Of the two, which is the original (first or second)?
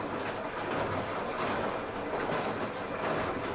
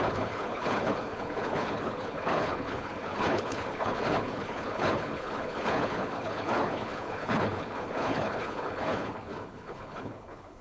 first